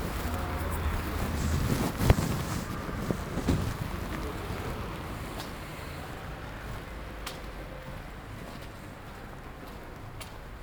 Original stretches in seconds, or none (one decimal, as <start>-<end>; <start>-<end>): 0.0-10.6